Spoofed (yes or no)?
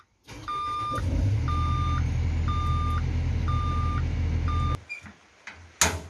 no